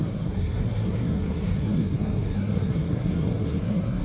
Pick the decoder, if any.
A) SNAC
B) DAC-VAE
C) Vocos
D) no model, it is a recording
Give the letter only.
A